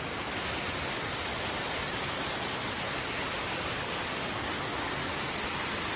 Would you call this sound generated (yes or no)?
no